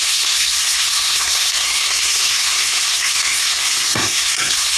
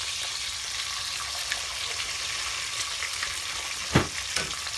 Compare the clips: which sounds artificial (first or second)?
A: first